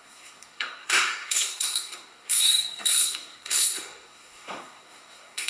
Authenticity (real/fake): fake